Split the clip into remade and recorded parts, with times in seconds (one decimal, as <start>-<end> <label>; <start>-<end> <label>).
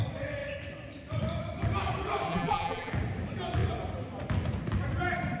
0.0-2.3 recorded; 2.3-2.9 remade; 2.9-5.4 recorded